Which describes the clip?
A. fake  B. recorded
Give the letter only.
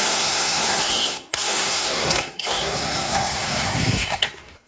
A